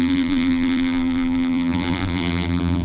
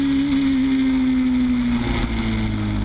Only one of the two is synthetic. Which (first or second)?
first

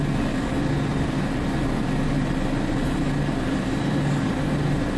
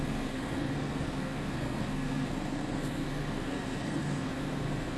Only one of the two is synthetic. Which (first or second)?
second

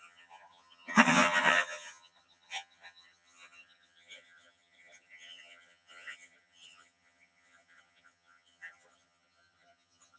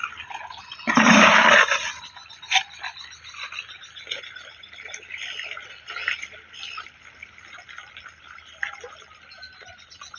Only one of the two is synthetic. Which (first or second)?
first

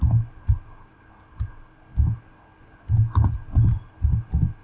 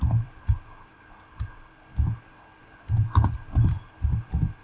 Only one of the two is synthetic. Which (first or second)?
second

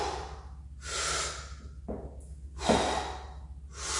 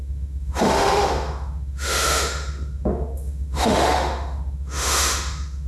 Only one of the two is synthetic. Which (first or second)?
second